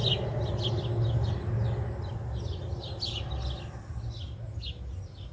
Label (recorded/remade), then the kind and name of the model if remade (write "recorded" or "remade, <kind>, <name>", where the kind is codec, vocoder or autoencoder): recorded